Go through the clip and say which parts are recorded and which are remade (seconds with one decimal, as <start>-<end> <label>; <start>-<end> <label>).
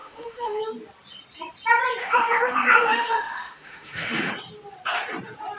0.0-0.6 remade; 0.6-2.0 recorded; 2.0-4.3 remade; 4.3-5.6 recorded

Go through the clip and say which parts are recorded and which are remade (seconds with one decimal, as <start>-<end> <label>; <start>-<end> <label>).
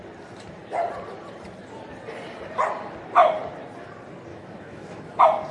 0.0-4.3 recorded; 4.3-5.0 remade; 5.0-5.5 recorded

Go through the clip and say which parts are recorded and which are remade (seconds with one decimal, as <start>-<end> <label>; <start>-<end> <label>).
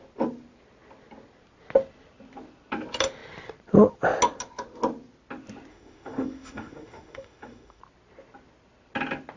0.0-5.7 recorded; 5.7-7.8 remade; 7.8-9.4 recorded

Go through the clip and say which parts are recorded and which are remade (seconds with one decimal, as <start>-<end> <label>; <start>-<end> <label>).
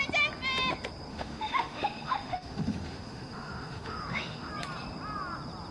0.0-1.1 recorded; 1.1-4.5 remade; 4.5-5.7 recorded